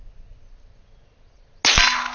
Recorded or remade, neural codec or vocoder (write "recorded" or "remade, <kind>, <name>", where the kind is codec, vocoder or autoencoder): recorded